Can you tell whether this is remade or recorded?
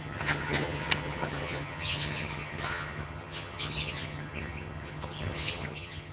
remade